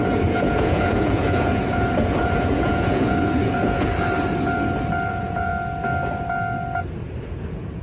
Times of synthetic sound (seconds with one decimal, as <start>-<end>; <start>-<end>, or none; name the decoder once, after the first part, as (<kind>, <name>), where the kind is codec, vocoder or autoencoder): 0.0-3.9 (vocoder, Vocos); 5.1-5.5; 7.2-7.8